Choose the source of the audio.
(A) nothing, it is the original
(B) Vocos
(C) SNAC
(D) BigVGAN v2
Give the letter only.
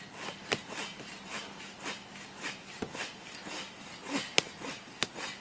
A